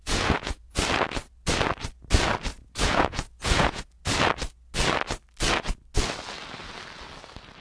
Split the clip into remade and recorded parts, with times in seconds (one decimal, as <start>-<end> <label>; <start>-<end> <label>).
0.0-0.8 remade; 0.8-2.5 recorded; 2.5-3.8 remade; 3.8-7.6 recorded